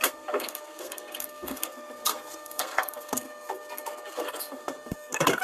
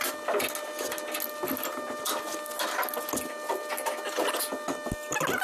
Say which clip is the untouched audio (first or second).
second